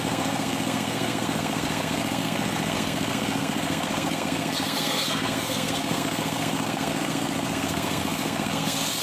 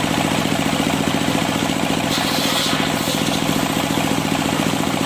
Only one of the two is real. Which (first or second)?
second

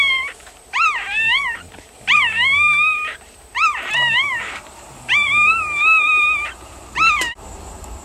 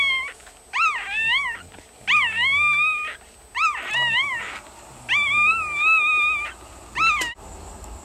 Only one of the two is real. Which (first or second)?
second